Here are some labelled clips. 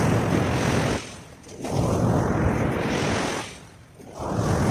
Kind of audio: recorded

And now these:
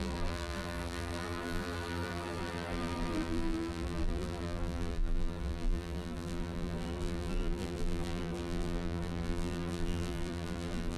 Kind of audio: remade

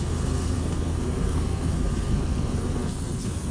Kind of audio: remade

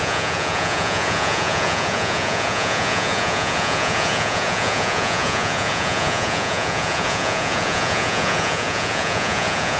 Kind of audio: remade